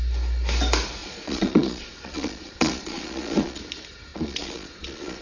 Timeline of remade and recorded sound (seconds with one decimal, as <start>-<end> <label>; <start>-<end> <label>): 0.0-1.0 recorded; 1.0-3.6 remade; 3.6-4.1 recorded; 4.1-5.2 remade